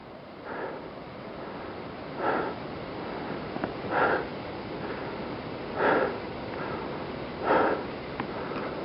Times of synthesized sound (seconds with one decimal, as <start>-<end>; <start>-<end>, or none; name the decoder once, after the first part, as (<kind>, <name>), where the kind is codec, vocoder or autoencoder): 0.0-1.2 (vocoder, BigVGAN v2)